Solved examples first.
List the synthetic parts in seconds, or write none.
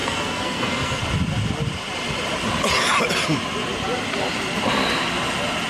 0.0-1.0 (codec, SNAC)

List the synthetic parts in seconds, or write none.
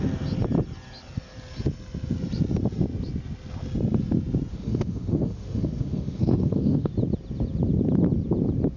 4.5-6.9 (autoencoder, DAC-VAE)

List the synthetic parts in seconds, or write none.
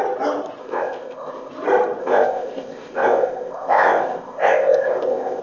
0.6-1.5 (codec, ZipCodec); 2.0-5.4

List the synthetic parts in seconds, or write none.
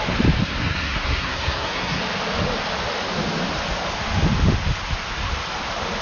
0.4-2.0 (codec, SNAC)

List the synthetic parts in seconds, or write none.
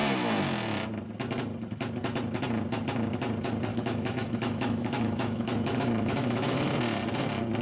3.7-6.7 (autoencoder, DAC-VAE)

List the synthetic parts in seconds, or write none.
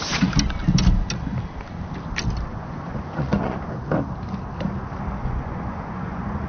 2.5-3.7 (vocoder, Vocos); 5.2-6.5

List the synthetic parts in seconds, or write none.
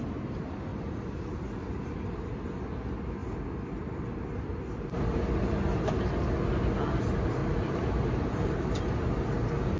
0.7-1.5 (vocoder, BigVGAN v2); 7.4-8.7